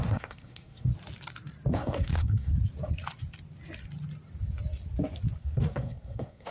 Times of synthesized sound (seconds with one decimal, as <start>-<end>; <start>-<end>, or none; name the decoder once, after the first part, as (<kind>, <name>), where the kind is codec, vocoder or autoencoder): 0.0-0.9 (codec, SNAC); 1.7-2.5; 5.4-6.5